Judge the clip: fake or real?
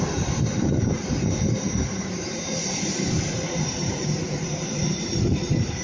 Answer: fake